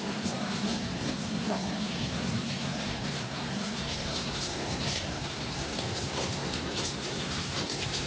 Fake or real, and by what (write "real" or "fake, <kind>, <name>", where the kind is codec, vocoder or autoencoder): fake, codec, SNAC